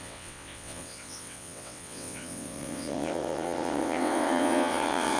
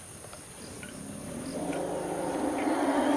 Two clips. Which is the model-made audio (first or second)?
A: first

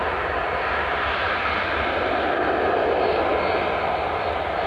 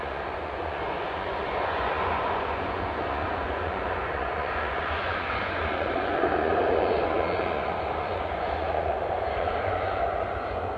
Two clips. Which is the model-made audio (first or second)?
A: second